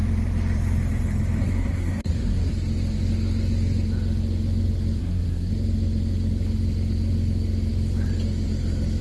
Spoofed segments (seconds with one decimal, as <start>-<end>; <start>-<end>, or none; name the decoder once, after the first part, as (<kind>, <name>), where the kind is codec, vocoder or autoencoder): 1.4-2.5 (codec, SNAC); 5.0-5.5